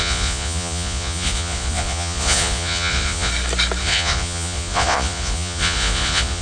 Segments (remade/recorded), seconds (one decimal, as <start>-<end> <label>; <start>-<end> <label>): 0.0-3.3 remade; 3.3-3.8 recorded; 3.8-6.4 remade